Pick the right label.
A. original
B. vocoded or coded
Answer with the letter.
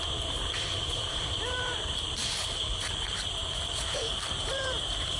B